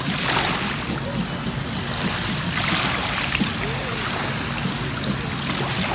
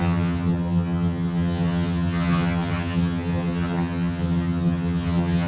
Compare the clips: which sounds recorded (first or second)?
first